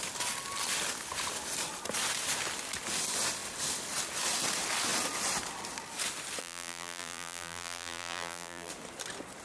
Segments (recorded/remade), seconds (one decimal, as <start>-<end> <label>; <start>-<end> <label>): 0.0-6.4 recorded; 6.4-8.7 remade; 8.7-9.4 recorded